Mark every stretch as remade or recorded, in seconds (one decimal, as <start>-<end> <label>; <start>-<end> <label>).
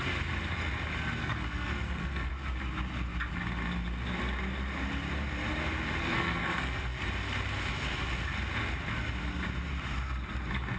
0.0-1.2 recorded; 1.2-2.3 remade; 2.3-6.0 recorded; 6.0-7.0 remade; 7.0-10.8 recorded